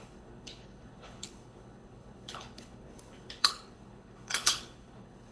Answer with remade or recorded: remade